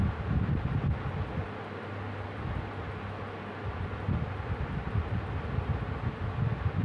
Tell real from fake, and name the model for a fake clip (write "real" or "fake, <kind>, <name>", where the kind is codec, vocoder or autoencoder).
real